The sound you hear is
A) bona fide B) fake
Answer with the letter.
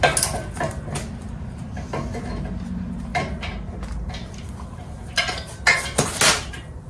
A